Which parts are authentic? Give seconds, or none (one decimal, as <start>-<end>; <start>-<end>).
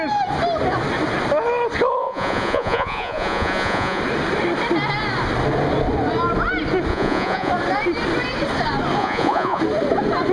0.0-2.0; 4.0-6.9; 7.5-9.0; 9.6-10.3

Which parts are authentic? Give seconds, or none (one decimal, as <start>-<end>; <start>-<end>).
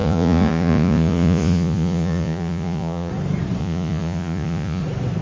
3.1-3.6; 4.8-5.2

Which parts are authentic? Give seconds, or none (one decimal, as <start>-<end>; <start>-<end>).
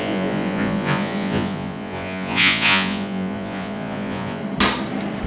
4.4-5.3